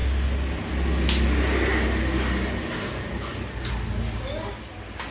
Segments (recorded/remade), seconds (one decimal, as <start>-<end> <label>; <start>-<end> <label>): 0.0-5.1 recorded